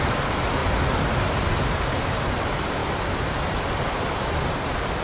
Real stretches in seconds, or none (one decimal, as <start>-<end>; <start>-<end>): 0.6-2.4; 2.8-4.5